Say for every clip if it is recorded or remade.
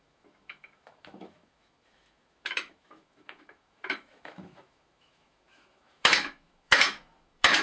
remade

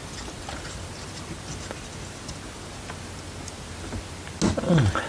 recorded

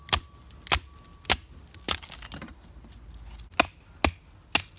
recorded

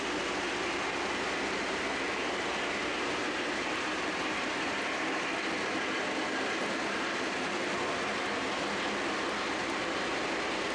recorded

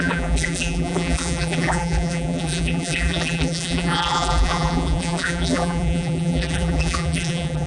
remade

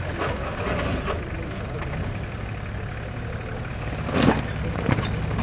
recorded